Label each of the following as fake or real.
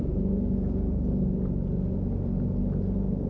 real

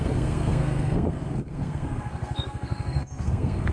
fake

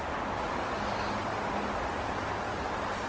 real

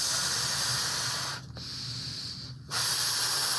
real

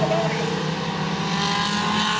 real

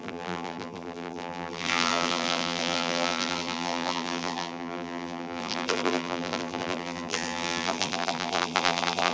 fake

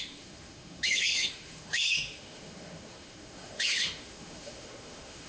fake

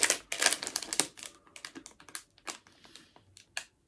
real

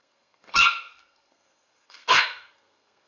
fake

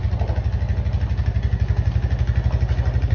real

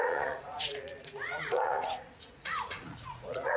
fake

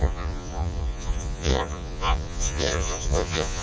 fake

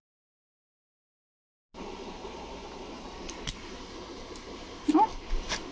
real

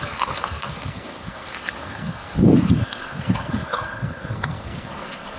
fake